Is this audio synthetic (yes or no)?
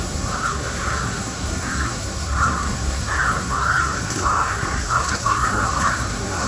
yes